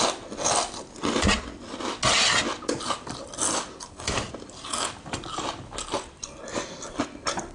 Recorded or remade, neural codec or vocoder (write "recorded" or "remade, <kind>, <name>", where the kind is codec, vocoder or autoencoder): recorded